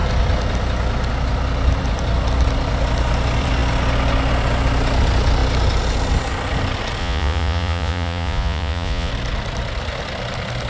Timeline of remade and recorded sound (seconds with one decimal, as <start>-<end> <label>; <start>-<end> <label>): 0.0-7.0 recorded; 7.0-9.1 remade; 9.1-10.7 recorded